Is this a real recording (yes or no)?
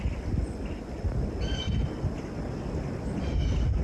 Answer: yes